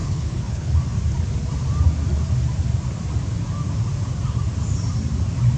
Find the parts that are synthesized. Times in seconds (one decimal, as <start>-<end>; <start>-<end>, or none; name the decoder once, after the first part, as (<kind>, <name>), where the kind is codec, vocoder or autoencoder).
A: 0.0-0.7 (codec, HILCodec)